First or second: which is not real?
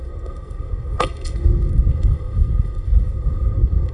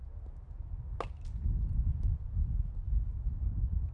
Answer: first